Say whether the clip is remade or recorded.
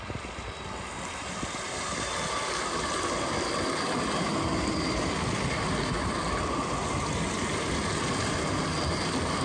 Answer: recorded